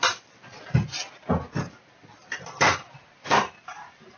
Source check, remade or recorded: recorded